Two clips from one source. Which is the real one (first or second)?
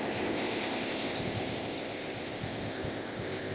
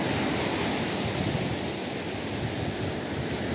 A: second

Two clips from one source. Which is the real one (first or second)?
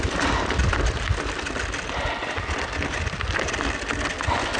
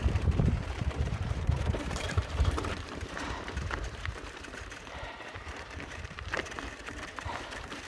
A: first